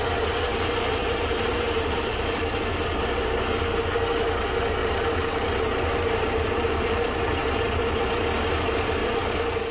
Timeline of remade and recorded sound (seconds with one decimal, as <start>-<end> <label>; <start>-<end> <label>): 0.0-0.5 recorded; 0.5-3.4 remade; 3.4-4.8 recorded; 4.8-8.0 remade; 8.0-9.7 recorded

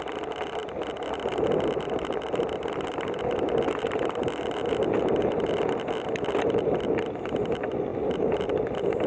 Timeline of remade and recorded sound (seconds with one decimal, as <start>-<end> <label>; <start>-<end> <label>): 0.0-9.1 recorded